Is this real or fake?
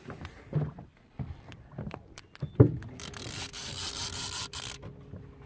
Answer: fake